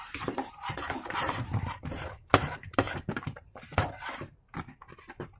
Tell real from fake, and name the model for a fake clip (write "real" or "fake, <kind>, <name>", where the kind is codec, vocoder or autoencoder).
fake, vocoder, BigVGAN v2